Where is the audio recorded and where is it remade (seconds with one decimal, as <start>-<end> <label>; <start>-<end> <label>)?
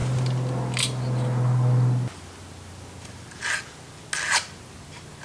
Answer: 0.0-5.2 recorded